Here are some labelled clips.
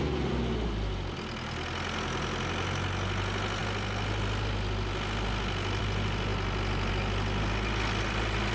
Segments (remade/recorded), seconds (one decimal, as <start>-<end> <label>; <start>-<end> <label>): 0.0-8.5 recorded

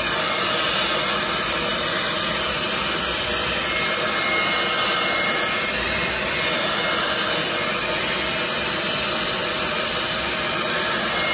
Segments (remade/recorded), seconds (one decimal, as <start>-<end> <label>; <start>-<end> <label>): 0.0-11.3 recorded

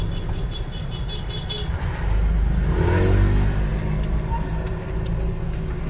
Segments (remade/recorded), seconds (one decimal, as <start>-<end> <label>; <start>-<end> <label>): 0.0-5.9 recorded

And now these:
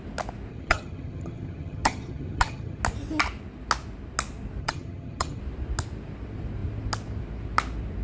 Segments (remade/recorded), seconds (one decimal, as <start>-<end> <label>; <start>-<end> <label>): 0.0-0.5 recorded; 0.5-2.8 remade; 2.8-4.6 recorded; 4.6-5.4 remade; 5.4-8.0 recorded

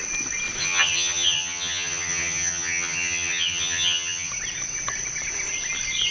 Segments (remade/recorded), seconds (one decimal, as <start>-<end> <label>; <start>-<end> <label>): 0.0-0.6 recorded; 0.6-4.3 remade; 4.3-6.1 recorded

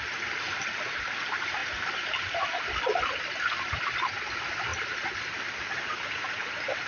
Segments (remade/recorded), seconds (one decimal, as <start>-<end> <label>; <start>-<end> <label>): 0.0-6.9 recorded

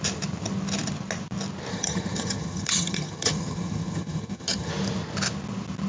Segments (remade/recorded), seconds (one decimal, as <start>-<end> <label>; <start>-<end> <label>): 0.0-1.7 recorded; 1.7-4.7 remade; 4.7-5.9 recorded

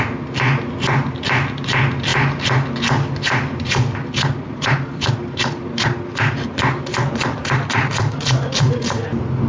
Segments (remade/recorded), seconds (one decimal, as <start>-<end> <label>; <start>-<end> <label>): 0.0-9.5 recorded